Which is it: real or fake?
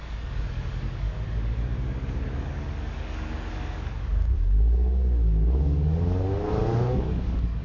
fake